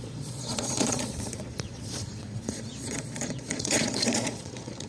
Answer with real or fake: fake